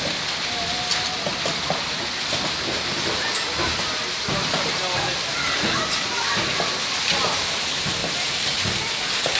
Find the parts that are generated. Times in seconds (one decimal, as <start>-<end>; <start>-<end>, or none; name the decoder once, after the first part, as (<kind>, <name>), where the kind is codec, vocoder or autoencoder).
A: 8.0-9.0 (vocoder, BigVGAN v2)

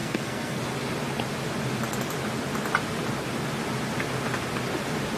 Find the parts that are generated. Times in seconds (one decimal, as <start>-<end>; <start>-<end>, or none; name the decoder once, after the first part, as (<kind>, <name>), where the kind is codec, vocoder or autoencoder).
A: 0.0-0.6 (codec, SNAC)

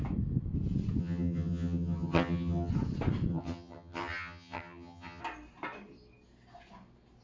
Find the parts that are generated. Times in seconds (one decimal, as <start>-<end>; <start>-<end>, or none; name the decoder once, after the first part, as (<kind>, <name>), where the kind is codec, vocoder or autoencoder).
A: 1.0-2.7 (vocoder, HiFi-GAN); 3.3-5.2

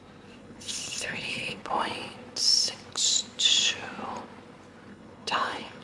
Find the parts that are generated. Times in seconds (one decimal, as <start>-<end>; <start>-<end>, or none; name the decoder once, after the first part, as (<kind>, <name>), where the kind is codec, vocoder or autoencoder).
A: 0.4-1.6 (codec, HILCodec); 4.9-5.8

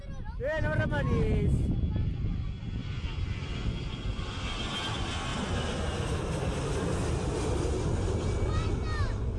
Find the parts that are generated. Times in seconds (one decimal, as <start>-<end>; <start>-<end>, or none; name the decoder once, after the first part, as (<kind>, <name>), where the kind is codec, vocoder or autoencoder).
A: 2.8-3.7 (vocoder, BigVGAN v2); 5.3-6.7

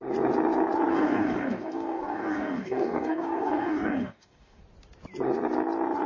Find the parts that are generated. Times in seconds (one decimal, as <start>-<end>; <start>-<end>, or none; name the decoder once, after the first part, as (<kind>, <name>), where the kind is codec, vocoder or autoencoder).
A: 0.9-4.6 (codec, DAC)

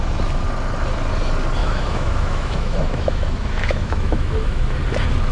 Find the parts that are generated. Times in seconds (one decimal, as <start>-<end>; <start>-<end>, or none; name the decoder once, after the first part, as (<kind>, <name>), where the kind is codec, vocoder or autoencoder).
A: 1.6-4.8 (autoencoder, DAC-VAE)